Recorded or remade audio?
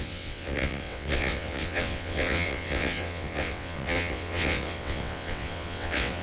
remade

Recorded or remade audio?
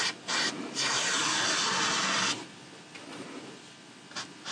recorded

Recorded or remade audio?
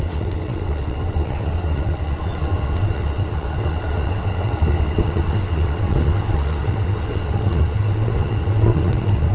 remade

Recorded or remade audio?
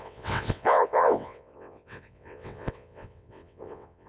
remade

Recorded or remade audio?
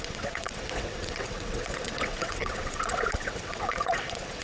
remade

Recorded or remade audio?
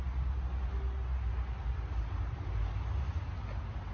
recorded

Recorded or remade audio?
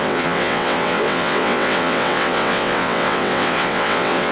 remade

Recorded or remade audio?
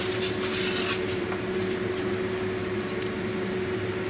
recorded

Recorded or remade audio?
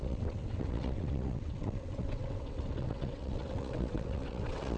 remade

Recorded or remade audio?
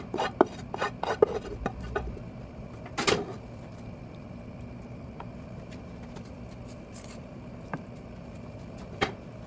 recorded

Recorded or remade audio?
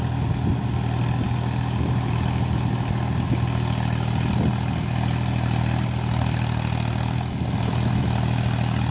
recorded